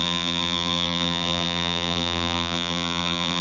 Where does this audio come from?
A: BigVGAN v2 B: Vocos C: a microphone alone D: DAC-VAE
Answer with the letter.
A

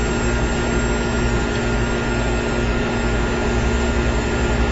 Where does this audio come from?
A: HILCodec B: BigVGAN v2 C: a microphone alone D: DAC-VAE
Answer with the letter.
C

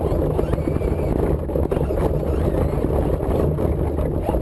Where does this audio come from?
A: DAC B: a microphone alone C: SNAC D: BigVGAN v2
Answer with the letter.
B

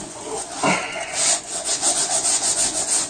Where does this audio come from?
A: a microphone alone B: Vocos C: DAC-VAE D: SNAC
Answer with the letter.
B